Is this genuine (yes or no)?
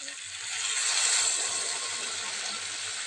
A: yes